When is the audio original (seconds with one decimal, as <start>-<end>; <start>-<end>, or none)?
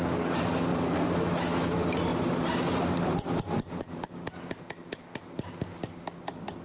0.0-0.7; 1.3-2.1; 4.6-6.6